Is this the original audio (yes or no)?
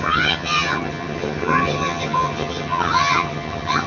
no